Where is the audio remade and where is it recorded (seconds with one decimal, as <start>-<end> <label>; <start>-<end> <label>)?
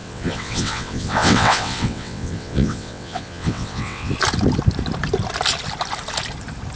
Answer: 0.0-4.1 remade; 4.1-6.8 recorded